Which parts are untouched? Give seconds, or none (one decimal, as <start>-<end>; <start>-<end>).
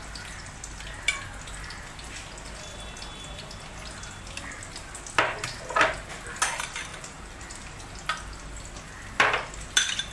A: 0.0-6.9; 7.5-10.1